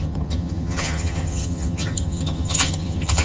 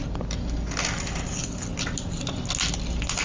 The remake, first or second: first